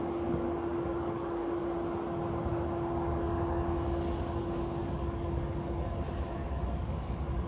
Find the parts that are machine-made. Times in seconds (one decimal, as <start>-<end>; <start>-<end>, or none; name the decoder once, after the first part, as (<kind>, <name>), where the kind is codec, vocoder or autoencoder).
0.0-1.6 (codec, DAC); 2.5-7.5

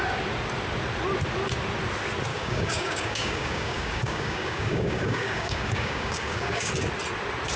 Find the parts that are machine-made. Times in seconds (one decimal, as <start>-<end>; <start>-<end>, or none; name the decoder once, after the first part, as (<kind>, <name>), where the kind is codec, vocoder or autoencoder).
2.3-6.7 (codec, DAC)

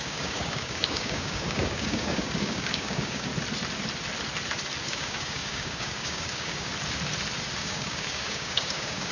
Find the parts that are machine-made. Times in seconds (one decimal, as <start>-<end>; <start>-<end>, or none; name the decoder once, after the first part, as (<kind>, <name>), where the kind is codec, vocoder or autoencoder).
0.0-3.3 (codec, DAC); 4.8-6.7; 7.6-9.1

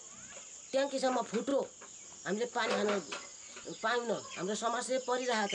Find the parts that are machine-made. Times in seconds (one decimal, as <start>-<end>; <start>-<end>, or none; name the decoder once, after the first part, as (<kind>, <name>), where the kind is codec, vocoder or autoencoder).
none

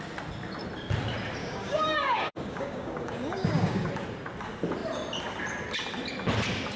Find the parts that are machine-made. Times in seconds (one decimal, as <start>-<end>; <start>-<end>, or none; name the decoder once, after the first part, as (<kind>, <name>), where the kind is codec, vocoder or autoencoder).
1.4-3.9 (codec, DAC)

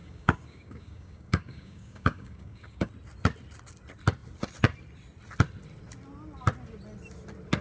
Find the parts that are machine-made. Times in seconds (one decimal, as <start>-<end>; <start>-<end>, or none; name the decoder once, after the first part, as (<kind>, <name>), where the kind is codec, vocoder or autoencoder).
0.0-2.9 (codec, DAC)

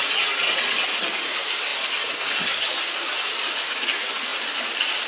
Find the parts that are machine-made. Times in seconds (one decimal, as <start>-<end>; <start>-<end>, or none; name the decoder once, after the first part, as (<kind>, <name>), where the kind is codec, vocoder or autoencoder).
none